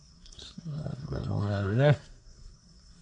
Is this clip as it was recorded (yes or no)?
no